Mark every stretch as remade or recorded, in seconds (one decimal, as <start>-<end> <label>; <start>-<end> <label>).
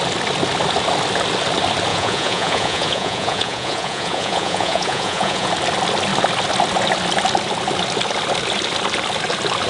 0.0-1.9 recorded; 1.9-5.5 remade; 5.5-9.7 recorded